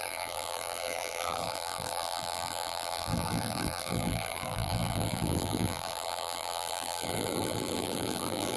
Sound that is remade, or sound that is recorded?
remade